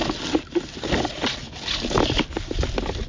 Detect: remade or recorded recorded